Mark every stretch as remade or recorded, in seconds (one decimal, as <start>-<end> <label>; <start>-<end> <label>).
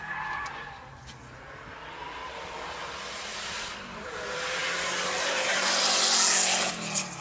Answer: 0.0-7.2 recorded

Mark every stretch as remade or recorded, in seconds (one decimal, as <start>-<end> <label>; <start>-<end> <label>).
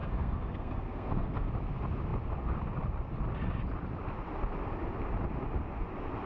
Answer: 0.0-1.5 remade; 1.5-6.3 recorded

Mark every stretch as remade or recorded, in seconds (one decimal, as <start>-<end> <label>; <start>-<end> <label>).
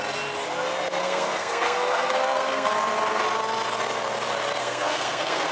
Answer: 0.0-1.0 recorded; 1.0-2.7 remade; 2.7-4.6 recorded; 4.6-5.5 remade